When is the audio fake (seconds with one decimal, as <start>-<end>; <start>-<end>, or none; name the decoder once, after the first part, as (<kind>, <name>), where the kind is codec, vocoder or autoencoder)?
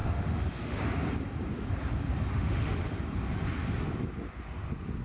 0.0-0.8 (autoencoder, DAC-VAE); 2.3-3.0